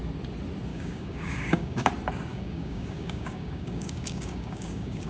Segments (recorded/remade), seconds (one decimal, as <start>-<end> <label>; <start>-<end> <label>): 0.0-0.7 recorded; 0.7-1.9 remade; 1.9-2.3 recorded; 2.3-5.1 remade

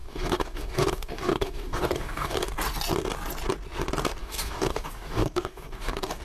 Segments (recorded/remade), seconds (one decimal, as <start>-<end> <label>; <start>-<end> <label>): 0.0-2.4 remade; 2.4-4.2 recorded; 4.2-6.2 remade

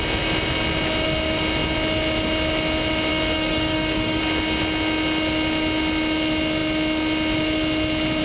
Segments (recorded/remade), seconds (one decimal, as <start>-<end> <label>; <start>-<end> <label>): 0.0-3.1 recorded; 3.1-4.2 remade; 4.2-8.2 recorded

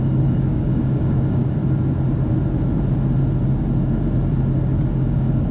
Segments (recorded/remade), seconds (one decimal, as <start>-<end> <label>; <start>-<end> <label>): 0.0-1.6 remade; 1.6-4.9 recorded; 4.9-5.5 remade